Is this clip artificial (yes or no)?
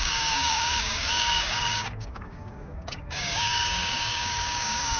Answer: yes